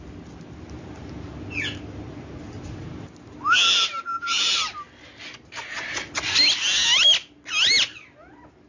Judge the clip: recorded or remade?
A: recorded